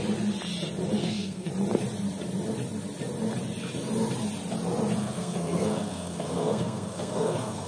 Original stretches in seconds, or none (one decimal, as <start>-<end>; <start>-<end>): 0.0-1.0; 1.5-5.0